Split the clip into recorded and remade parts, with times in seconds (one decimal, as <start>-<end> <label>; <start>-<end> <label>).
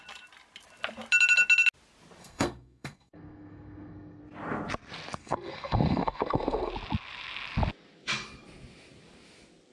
0.0-2.2 recorded; 2.2-4.2 remade; 4.2-5.2 recorded; 5.2-6.7 remade; 6.7-9.7 recorded